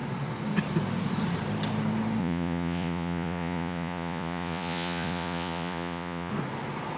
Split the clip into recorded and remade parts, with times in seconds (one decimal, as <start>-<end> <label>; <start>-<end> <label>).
0.0-2.2 recorded; 2.2-6.3 remade; 6.3-7.0 recorded